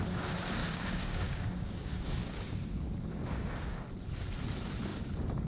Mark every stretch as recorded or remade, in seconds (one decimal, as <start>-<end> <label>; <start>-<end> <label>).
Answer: 0.0-0.6 recorded; 0.6-3.9 remade; 3.9-5.5 recorded